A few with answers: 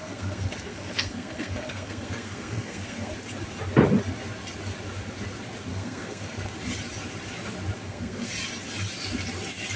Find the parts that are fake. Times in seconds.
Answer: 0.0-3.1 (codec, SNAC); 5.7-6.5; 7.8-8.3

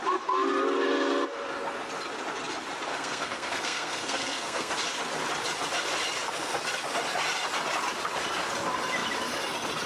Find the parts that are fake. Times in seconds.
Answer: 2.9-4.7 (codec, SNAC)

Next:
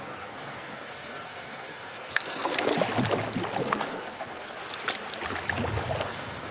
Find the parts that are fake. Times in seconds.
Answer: 0.0-2.7 (codec, SNAC); 3.6-4.6; 6.0-6.5

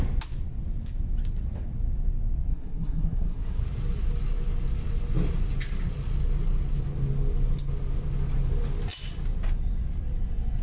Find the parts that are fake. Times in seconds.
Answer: 2.5-3.6 (codec, SNAC)

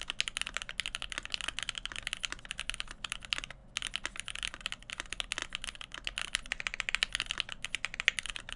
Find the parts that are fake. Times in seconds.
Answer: none

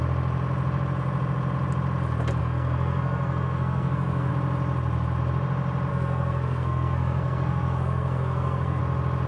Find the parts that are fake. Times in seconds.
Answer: 2.4-4.3 (codec, SNAC); 5.9-8.8